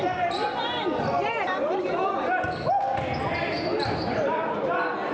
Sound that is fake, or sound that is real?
fake